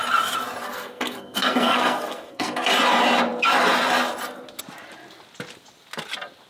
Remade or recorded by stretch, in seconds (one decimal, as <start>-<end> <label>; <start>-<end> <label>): 0.0-0.6 recorded; 0.6-2.7 remade; 2.7-6.5 recorded

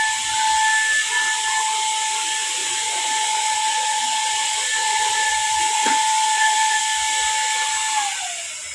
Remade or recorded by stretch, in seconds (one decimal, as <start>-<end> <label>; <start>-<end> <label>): 0.0-2.6 recorded; 2.6-6.8 remade; 6.8-8.7 recorded

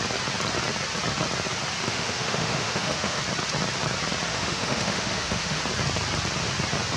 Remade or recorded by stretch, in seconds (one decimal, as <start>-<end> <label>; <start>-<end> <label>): 0.0-1.8 recorded; 1.8-3.2 remade; 3.2-4.3 recorded; 4.3-5.6 remade; 5.6-7.0 recorded

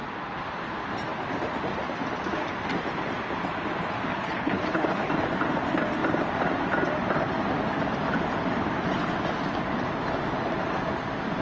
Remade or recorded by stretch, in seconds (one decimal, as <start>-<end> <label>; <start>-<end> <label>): 0.0-4.1 recorded; 4.1-5.1 remade; 5.1-11.4 recorded

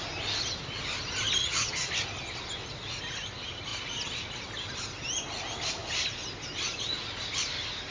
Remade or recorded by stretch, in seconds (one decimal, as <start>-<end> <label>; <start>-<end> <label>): 0.0-1.4 recorded; 1.4-1.9 remade; 1.9-7.9 recorded